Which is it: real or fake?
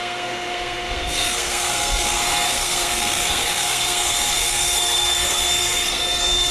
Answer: fake